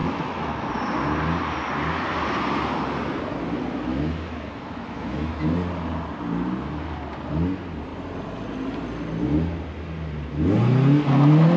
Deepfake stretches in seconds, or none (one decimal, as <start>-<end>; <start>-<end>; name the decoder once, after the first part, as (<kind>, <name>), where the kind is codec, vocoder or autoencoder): 0.0-0.7 (autoencoder, DAC-VAE); 3.9-5.3

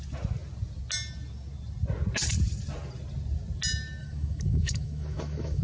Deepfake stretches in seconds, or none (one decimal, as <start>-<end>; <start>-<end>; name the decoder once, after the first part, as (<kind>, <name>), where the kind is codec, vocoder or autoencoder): 4.0-5.6 (autoencoder, DAC-VAE)

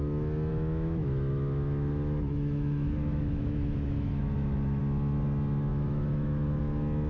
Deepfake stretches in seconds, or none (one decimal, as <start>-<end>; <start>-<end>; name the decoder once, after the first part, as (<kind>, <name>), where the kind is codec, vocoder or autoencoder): 0.5-4.8 (autoencoder, DAC-VAE); 5.7-6.6